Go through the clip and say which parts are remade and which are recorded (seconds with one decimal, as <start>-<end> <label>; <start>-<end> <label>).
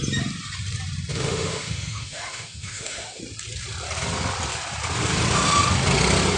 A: 0.0-1.1 recorded; 1.1-3.2 remade; 3.2-6.4 recorded